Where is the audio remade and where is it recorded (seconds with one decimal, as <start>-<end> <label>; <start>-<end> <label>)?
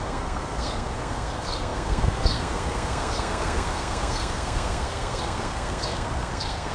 0.0-6.7 remade